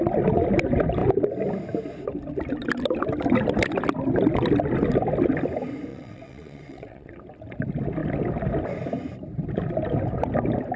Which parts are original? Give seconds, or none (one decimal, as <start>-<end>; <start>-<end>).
0.0-5.9; 7.1-10.8